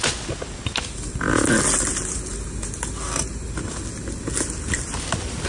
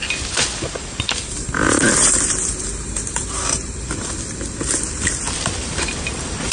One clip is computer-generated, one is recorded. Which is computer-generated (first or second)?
second